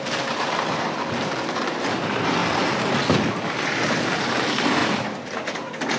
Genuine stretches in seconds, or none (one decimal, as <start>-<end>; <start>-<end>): 2.4-3.7; 4.8-6.0